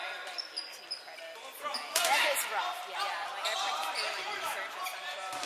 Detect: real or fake real